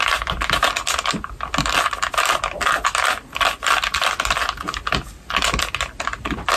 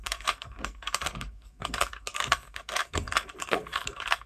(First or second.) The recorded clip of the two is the first